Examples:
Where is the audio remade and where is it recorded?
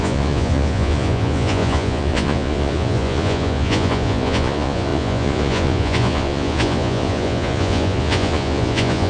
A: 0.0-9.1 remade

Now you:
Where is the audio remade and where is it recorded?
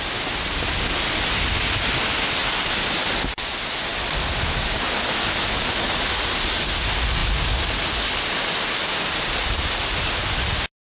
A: 0.0-10.9 recorded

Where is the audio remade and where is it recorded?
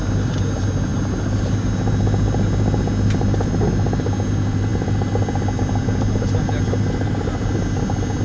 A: 0.0-8.2 recorded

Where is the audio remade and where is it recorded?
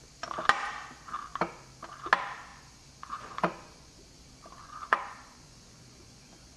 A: 0.0-2.5 recorded; 2.5-4.0 remade; 4.0-4.6 recorded; 4.6-6.6 remade